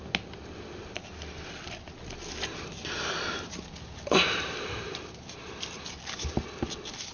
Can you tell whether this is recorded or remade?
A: recorded